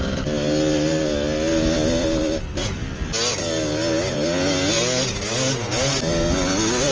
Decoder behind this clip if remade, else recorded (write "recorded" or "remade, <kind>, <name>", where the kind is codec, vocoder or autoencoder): recorded